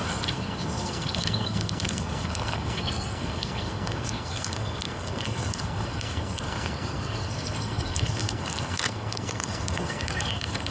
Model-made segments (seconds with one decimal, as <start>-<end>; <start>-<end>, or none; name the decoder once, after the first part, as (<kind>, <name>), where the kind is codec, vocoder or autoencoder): 0.0-10.7 (codec, SNAC)